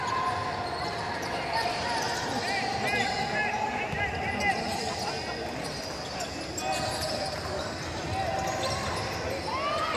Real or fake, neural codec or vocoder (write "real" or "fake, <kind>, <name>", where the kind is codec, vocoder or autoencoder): real